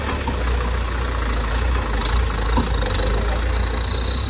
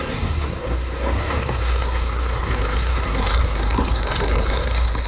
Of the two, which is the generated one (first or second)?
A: second